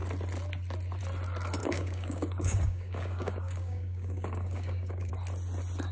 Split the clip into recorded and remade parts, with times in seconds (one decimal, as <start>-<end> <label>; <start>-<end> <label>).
0.0-1.6 recorded; 1.6-5.1 remade; 5.1-5.9 recorded